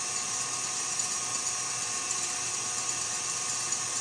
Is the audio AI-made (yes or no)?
no